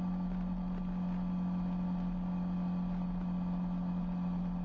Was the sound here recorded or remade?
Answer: recorded